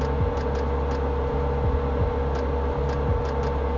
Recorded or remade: recorded